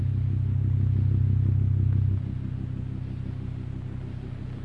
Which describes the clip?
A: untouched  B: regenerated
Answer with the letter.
A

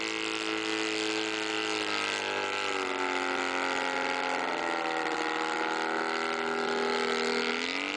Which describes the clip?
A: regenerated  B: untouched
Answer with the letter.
B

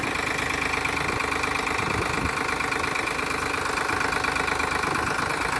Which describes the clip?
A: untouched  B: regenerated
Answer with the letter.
A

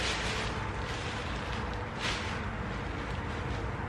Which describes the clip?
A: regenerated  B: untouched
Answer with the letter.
B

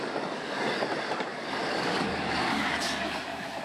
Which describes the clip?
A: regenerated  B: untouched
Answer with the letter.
A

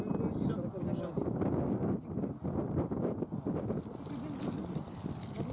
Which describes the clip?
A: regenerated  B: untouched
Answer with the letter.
B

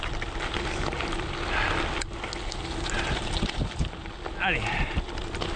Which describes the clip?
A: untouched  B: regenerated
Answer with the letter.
A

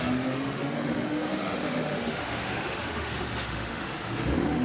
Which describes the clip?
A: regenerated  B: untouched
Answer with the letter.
A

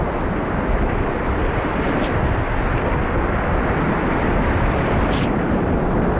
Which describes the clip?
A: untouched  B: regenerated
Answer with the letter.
B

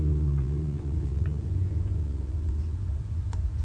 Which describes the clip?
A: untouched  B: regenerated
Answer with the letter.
B